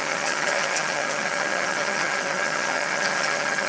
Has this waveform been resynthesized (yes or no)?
yes